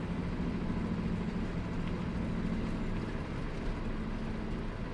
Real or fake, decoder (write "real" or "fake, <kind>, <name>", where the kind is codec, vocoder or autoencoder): real